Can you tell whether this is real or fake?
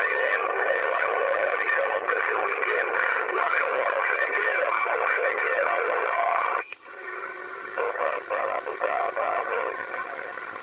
fake